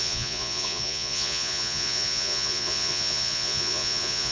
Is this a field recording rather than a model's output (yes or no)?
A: no